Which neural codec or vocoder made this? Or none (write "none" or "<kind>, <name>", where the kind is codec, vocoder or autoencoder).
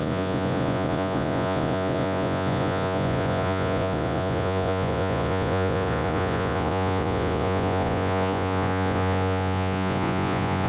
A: vocoder, Vocos